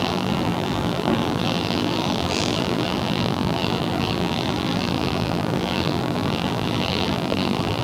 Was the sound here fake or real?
fake